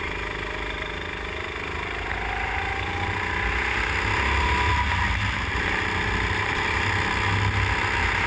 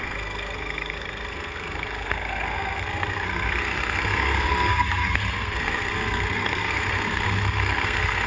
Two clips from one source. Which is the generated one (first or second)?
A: second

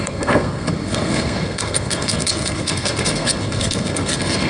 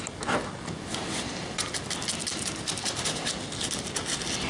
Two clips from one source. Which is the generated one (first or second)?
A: first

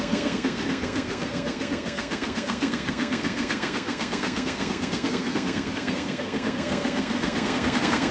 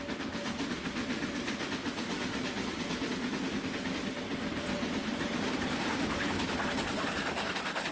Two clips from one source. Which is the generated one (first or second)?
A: first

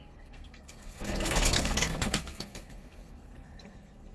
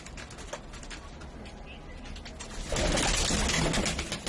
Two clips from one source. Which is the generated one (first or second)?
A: first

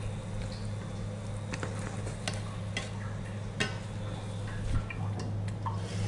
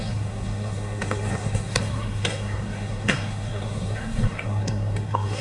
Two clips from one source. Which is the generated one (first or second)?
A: second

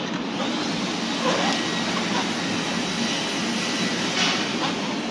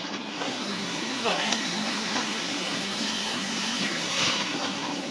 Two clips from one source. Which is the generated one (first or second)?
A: second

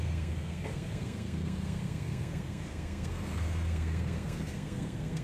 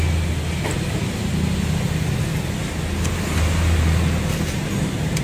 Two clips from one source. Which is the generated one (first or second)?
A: first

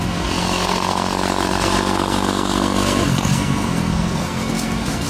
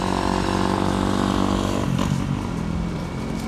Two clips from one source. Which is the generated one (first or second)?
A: first